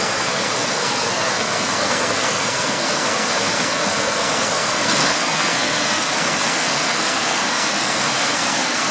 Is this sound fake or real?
fake